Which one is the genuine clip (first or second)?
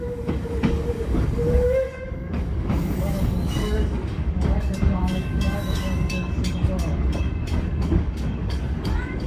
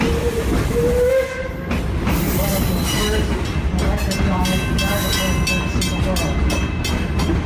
second